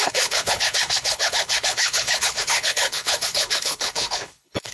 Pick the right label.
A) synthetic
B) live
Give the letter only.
A